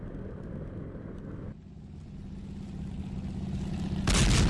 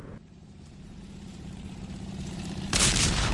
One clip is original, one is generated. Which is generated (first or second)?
second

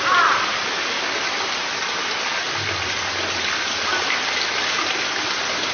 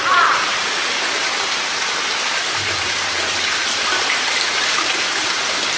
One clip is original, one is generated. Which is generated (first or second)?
second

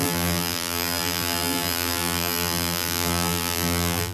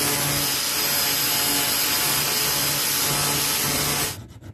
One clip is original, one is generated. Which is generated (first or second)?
first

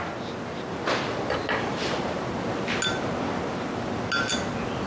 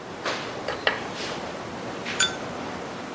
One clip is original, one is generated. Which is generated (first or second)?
second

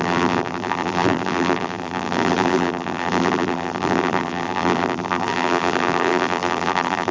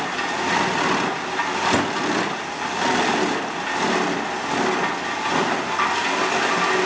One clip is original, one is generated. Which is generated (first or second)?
first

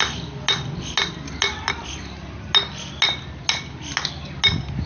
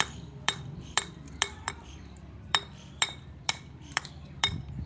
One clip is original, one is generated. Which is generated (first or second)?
second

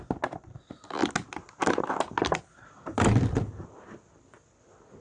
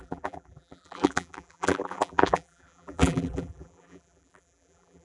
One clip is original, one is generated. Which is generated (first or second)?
second